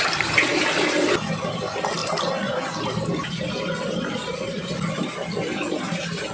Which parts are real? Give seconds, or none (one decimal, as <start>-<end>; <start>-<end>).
0.0-6.3